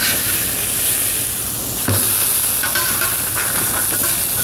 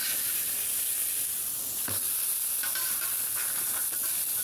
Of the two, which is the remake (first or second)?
second